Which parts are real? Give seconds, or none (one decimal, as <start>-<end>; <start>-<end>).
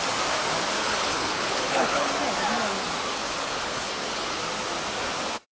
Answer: 0.0-0.8; 2.1-3.2; 4.4-5.5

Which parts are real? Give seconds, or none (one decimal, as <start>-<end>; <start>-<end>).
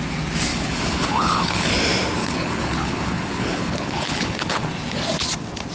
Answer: 0.0-0.5; 1.7-2.2; 4.7-5.7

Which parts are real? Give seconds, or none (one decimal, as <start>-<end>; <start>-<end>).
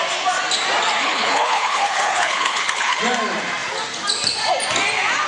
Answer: 0.0-1.0; 3.0-5.3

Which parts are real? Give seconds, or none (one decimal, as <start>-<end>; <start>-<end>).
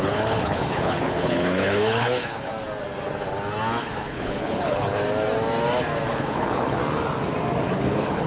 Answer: 2.5-3.8; 5.0-6.1; 6.8-7.7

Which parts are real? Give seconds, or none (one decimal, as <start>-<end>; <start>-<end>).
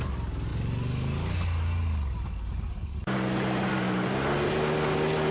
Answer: 0.0-5.3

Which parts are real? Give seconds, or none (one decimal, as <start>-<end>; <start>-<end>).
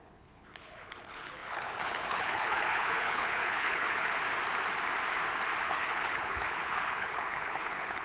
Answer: 4.1-5.6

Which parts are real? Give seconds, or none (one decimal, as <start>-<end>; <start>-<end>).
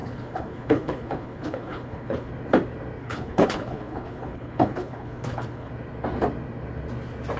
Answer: 2.3-3.0; 5.7-7.4